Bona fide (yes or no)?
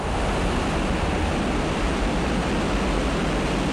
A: yes